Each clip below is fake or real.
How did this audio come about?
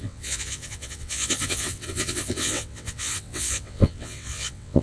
fake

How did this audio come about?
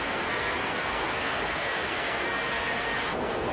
fake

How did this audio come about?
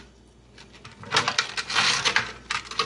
real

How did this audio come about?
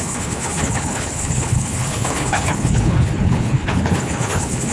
fake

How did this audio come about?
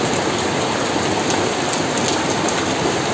real